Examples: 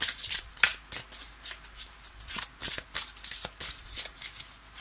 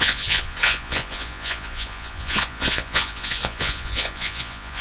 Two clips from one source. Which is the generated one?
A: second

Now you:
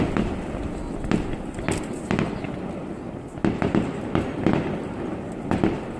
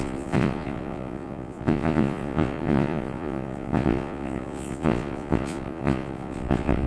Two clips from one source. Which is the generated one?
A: second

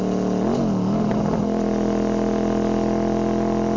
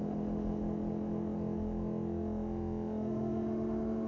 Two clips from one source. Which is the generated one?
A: second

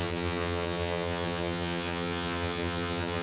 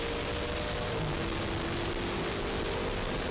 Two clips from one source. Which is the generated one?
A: first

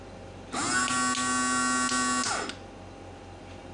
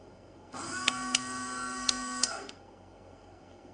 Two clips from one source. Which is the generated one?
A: second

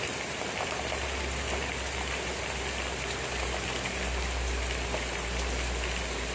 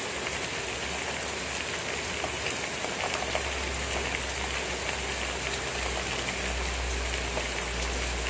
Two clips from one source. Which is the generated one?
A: first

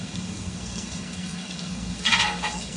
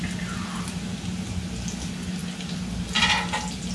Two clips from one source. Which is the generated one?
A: first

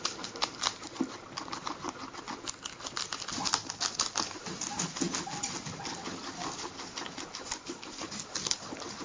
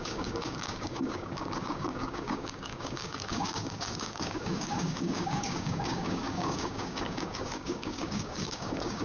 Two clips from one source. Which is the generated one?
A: second